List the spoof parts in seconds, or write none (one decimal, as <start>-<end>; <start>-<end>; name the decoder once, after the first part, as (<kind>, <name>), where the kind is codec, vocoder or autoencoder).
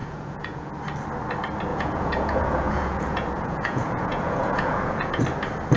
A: 0.0-0.7 (vocoder, Vocos); 1.7-5.2